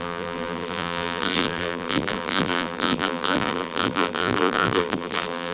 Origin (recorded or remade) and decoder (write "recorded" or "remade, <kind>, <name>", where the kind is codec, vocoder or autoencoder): remade, vocoder, BigVGAN v2